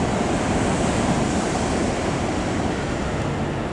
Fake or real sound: real